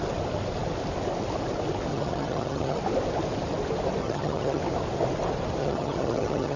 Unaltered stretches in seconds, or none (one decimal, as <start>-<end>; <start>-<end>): 0.0-1.9; 2.8-4.0; 4.6-5.6